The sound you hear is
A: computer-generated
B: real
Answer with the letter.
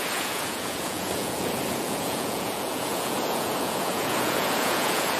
A